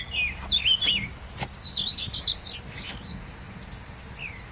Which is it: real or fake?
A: real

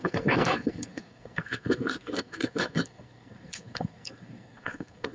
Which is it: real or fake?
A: fake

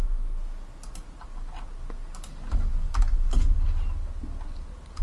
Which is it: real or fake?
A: real